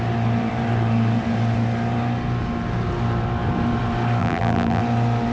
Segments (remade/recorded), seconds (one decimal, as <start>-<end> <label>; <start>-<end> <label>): 0.0-4.2 recorded; 4.2-4.8 remade; 4.8-5.3 recorded